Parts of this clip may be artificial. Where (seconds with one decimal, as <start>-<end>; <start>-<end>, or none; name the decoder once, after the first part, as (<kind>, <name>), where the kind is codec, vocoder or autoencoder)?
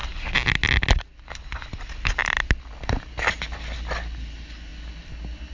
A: none